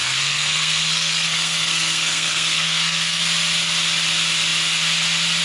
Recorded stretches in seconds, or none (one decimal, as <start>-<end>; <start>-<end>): 3.2-5.4